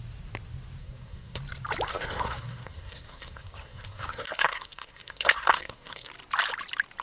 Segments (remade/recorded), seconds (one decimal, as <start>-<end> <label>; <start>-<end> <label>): 0.0-0.8 recorded; 0.8-1.4 remade; 1.4-1.9 recorded; 1.9-6.1 remade; 6.1-7.0 recorded